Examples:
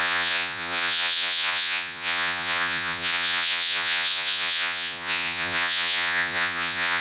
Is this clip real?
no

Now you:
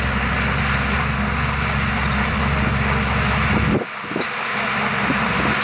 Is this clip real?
yes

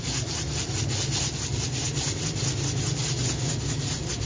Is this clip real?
yes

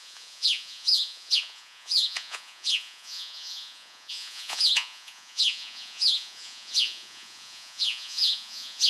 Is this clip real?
no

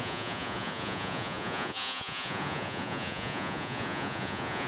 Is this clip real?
no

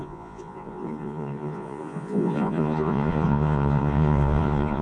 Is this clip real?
no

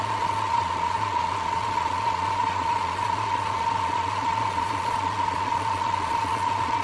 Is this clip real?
no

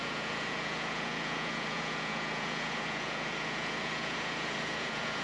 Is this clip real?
no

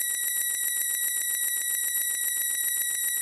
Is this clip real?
no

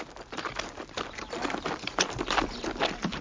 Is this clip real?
yes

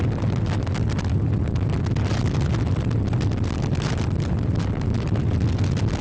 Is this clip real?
yes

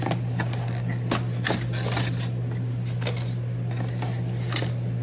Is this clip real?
yes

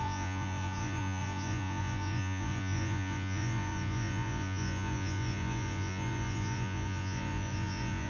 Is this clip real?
no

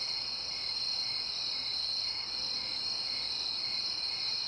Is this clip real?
yes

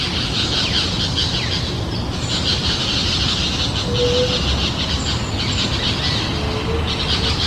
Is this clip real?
yes